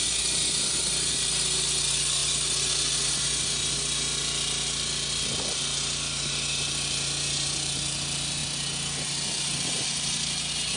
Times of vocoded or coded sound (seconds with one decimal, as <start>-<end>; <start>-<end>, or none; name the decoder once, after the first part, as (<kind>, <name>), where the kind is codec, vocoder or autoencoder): none